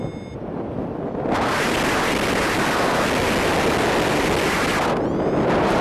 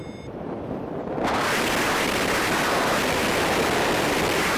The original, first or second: first